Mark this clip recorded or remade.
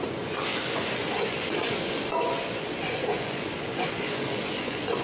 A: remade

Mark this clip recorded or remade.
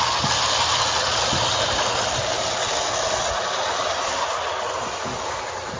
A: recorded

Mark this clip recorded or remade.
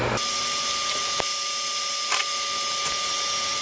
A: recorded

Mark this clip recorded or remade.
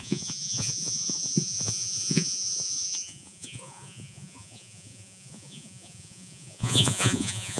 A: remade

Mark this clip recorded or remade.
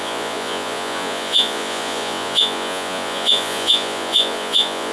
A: remade